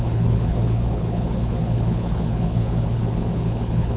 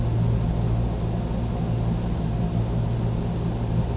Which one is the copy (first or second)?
first